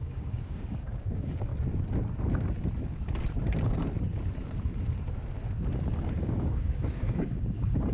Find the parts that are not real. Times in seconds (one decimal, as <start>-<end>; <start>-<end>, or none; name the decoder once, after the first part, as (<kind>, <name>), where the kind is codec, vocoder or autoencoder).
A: 0.0-1.5 (codec, DAC); 6.2-7.9